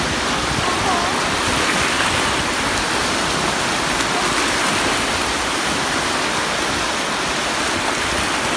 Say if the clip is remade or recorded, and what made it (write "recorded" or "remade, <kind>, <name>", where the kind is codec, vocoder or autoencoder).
recorded